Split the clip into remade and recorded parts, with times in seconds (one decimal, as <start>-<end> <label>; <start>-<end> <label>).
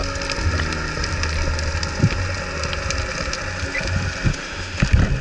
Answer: 0.0-4.3 recorded; 4.3-4.8 remade; 4.8-5.2 recorded